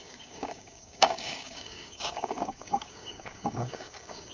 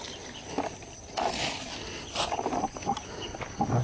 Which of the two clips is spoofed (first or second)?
first